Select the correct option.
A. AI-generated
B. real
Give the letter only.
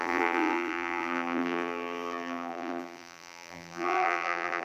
A